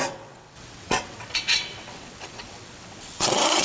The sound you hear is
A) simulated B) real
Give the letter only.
A